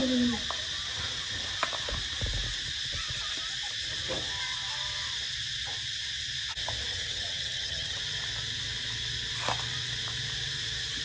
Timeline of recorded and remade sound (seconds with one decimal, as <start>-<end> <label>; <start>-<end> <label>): 0.0-6.9 recorded; 6.9-8.0 remade; 8.0-11.0 recorded